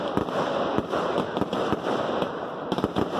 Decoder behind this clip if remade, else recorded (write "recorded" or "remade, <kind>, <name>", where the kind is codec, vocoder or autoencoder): recorded